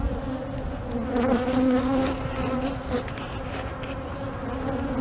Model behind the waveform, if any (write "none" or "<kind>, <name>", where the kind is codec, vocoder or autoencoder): none